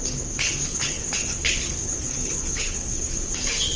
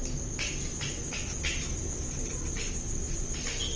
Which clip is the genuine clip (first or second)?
second